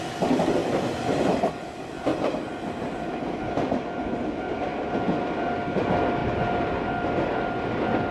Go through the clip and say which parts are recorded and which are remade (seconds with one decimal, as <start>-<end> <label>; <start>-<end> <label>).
0.0-0.6 recorded; 0.6-1.4 remade; 1.4-4.7 recorded; 4.7-5.5 remade; 5.5-6.2 recorded; 6.2-6.7 remade; 6.7-8.1 recorded